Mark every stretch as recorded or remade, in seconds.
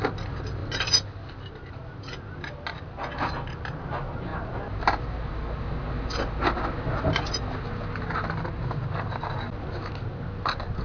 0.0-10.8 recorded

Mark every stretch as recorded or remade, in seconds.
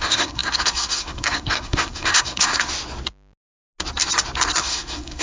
0.0-2.7 remade; 2.7-4.6 recorded; 4.6-5.2 remade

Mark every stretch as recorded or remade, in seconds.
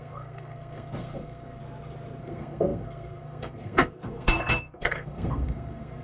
0.0-1.6 remade; 1.6-2.2 recorded; 2.2-6.0 remade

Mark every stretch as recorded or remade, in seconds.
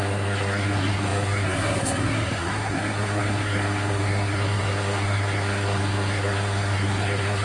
0.0-7.4 remade